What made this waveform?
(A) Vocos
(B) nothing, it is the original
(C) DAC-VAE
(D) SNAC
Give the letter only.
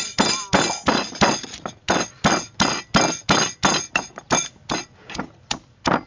B